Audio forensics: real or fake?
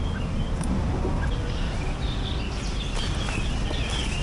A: real